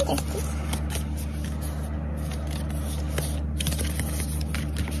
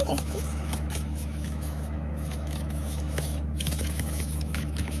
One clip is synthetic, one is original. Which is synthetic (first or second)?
second